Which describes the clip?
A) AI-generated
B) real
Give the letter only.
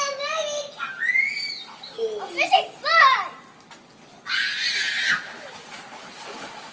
B